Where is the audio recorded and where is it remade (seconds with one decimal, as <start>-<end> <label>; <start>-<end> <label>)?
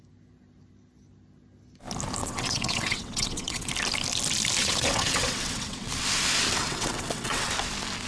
0.0-2.2 recorded; 2.2-3.7 remade; 3.7-4.6 recorded; 4.6-5.9 remade; 5.9-6.6 recorded; 6.6-7.5 remade; 7.5-8.1 recorded